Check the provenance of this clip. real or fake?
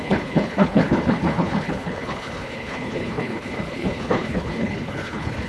fake